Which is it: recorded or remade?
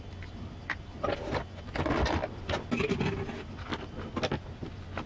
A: recorded